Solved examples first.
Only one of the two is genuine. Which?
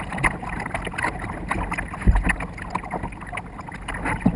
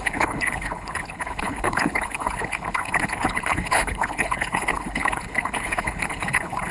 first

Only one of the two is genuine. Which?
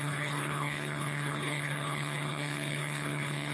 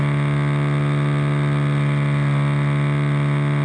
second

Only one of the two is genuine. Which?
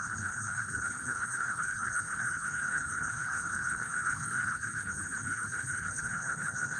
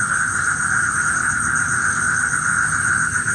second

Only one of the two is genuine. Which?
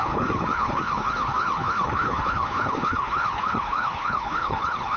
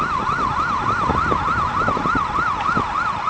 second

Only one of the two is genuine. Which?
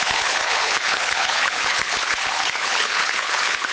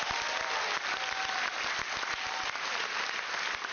second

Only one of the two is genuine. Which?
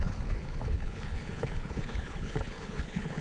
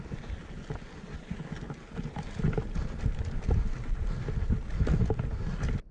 second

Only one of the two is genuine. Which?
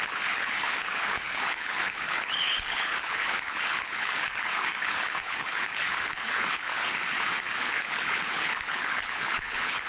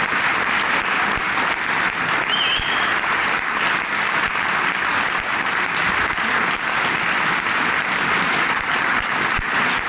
second